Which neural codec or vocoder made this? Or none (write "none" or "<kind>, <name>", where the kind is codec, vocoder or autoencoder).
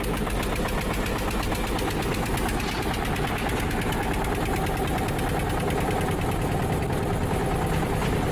none